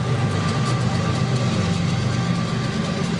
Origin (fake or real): real